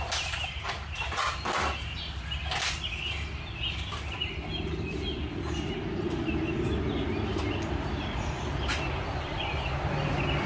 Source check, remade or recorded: recorded